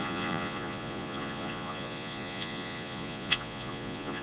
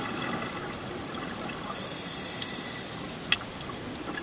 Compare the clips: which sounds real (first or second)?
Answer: second